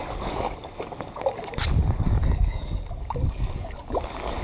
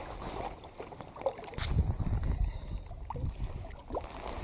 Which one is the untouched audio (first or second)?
second